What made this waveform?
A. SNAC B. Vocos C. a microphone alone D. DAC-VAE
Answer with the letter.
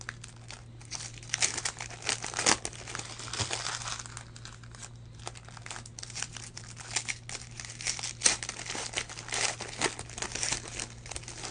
C